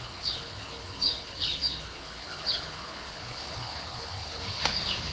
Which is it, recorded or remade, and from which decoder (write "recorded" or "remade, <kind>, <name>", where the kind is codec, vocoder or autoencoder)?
remade, codec, HILCodec